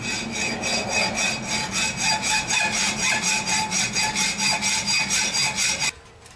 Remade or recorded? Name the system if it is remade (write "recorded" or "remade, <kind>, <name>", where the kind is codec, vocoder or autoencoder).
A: recorded